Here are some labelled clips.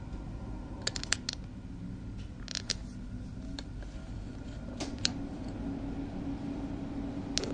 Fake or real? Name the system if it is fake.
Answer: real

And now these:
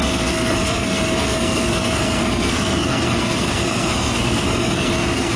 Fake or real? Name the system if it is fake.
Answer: fake, codec, SNAC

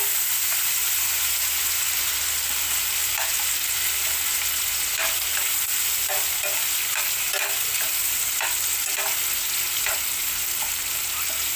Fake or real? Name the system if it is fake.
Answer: real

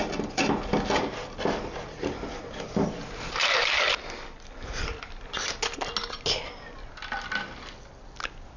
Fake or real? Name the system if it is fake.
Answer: real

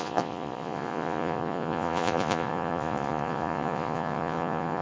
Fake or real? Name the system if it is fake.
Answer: fake, vocoder, Vocos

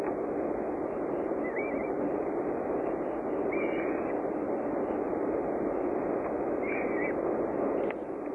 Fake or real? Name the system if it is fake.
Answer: real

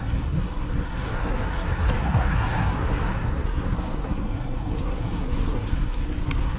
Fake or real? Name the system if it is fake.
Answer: fake, codec, SNAC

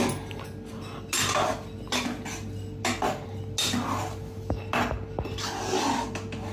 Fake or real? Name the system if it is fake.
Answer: real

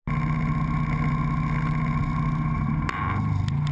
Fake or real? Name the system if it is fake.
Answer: real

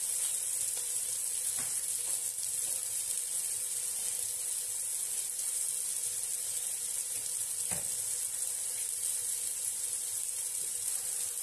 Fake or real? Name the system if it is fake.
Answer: real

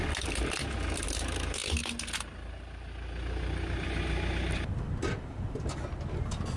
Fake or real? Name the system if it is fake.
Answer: real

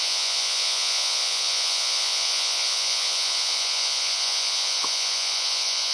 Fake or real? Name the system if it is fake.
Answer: fake, vocoder, Vocos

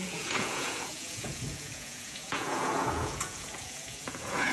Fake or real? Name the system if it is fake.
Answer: fake, vocoder, Vocos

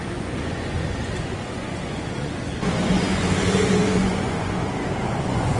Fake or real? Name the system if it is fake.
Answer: fake, vocoder, Vocos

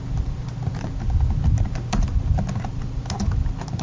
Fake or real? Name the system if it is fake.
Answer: real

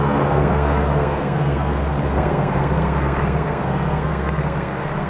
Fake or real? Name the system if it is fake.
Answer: fake, codec, SNAC